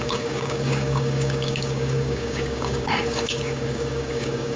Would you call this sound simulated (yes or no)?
yes